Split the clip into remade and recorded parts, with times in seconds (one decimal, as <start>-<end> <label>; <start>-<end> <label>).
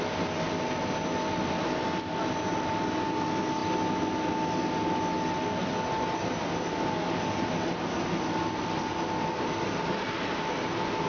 0.0-11.1 recorded